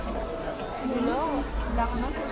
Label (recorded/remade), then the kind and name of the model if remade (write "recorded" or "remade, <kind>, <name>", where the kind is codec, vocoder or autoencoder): recorded